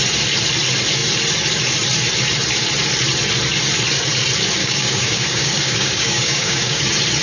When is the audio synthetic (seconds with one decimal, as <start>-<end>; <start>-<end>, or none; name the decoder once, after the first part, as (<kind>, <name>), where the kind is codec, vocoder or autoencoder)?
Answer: 4.6-6.8 (codec, DAC)